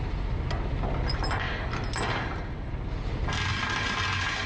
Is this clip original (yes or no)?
yes